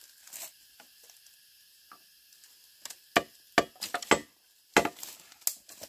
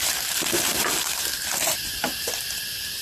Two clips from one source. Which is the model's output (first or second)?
second